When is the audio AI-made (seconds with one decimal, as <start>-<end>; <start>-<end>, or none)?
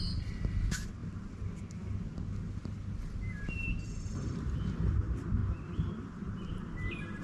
3.7-5.0; 5.4-6.5